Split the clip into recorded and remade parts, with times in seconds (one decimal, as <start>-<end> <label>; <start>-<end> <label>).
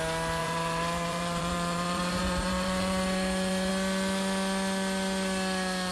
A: 0.0-0.4 recorded; 0.4-3.7 remade; 3.7-5.9 recorded